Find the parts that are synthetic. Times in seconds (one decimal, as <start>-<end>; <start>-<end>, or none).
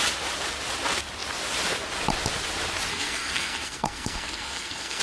2.9-5.0